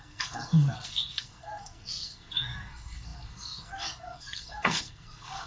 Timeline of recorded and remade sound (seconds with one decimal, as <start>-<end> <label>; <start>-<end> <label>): 0.0-5.5 remade